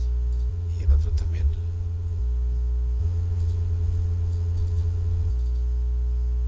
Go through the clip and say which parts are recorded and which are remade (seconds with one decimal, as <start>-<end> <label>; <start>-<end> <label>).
0.0-0.5 recorded; 0.5-2.2 remade; 2.2-3.0 recorded; 3.0-5.3 remade; 5.3-6.5 recorded